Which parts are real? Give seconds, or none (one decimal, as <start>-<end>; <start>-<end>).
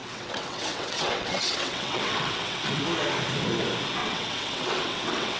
2.8-4.0